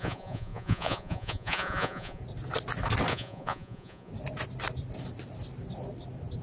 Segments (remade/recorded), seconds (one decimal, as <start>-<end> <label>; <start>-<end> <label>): 0.0-2.2 remade; 2.2-3.1 recorded; 3.1-4.1 remade; 4.1-6.4 recorded